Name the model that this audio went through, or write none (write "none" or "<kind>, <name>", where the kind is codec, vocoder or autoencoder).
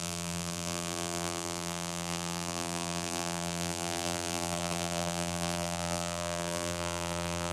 vocoder, BigVGAN v2